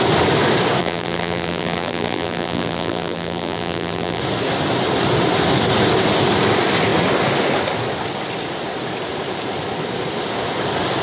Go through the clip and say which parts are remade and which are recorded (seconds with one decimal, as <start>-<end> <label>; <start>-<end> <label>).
0.0-0.8 recorded; 0.8-4.2 remade; 4.2-11.0 recorded